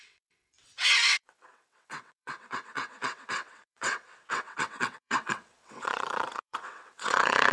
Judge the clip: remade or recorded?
remade